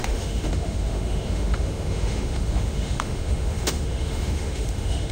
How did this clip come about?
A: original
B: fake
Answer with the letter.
B